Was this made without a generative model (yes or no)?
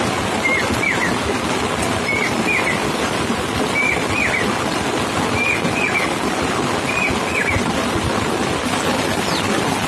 yes